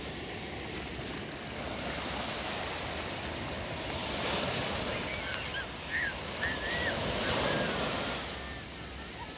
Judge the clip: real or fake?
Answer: real